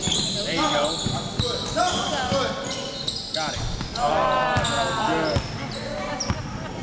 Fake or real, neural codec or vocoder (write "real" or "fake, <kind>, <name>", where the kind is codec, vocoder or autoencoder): real